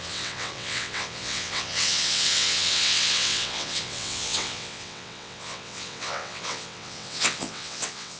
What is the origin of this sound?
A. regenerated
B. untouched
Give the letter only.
A